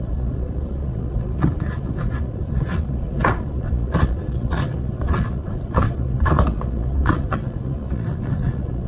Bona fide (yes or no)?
no